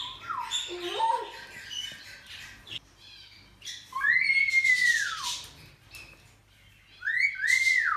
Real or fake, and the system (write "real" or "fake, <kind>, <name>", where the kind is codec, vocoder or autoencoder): real